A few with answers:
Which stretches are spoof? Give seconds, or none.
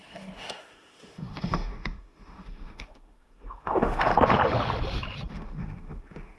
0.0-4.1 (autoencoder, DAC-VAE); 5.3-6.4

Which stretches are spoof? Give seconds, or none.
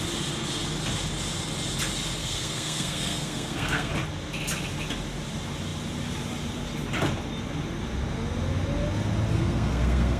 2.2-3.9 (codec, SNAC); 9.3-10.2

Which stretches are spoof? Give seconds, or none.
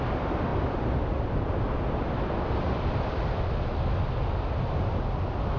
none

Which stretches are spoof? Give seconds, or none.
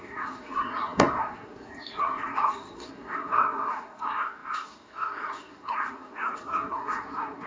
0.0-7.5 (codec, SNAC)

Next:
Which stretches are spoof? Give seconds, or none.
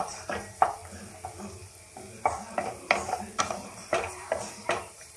0.0-0.8 (vocoder, BigVGAN v2); 3.4-5.2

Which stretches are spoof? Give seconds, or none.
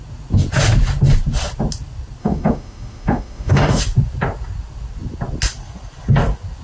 2.2-3.8 (autoencoder, DAC-VAE)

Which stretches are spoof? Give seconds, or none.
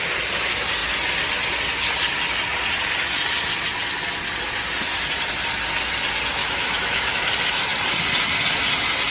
6.4-7.3 (autoencoder, DAC-VAE)